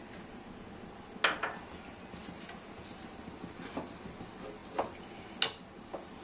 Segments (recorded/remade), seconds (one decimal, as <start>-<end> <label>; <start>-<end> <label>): 0.0-6.2 recorded